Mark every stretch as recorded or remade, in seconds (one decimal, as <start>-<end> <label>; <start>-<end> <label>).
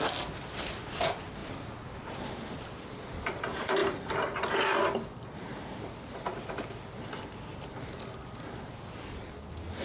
0.0-9.8 recorded